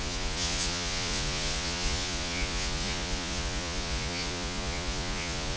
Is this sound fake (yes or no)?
yes